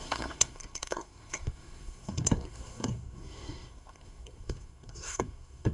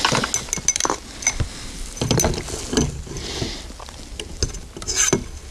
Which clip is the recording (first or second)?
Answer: second